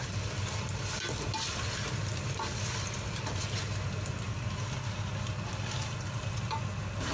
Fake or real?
real